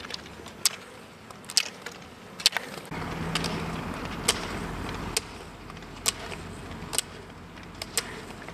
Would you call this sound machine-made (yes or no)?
no